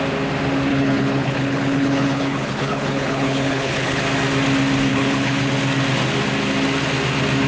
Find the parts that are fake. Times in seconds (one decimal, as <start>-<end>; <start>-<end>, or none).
0.7-4.0; 4.9-5.5